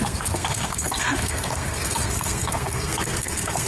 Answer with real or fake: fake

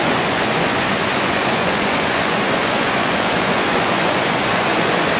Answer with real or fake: fake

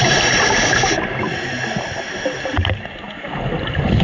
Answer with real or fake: real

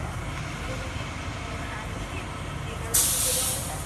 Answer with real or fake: real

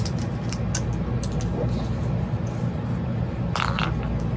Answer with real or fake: real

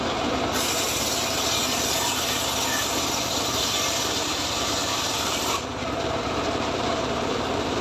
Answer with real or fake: fake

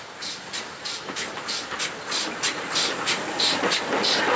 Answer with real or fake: real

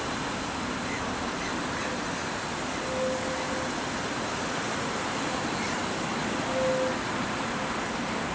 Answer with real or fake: real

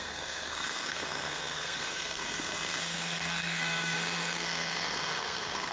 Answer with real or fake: fake